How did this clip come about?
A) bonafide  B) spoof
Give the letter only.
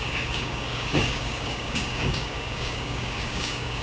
B